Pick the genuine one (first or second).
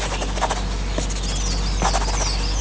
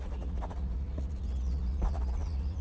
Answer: first